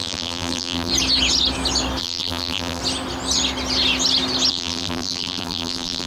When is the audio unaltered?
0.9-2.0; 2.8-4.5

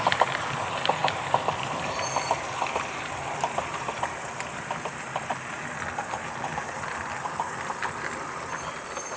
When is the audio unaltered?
5.3-7.0

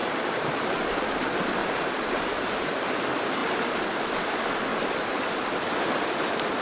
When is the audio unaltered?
1.2-1.6; 2.8-3.4; 4.0-4.7; 5.3-6.6

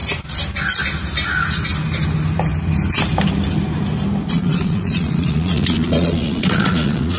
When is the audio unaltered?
0.0-4.3

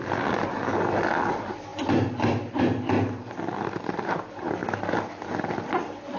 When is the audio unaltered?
0.0-6.2

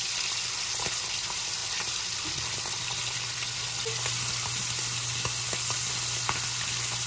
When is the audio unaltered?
0.0-7.1

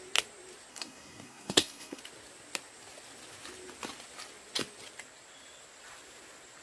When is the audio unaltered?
0.0-0.7; 2.0-6.6